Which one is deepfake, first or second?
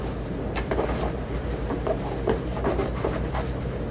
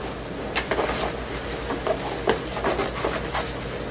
first